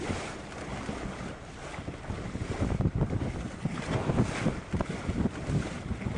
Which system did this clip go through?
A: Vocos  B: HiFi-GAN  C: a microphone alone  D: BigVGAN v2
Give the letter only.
C